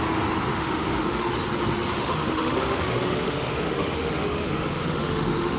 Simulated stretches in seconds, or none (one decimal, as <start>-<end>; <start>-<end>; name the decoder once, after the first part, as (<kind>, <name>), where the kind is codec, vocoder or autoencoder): 0.5-1.3 (autoencoder, DAC-VAE); 1.9-5.6